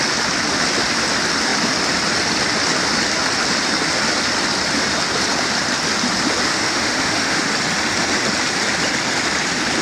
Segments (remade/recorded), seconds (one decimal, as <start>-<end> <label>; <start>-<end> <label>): 0.0-6.5 recorded; 6.5-7.5 remade; 7.5-9.8 recorded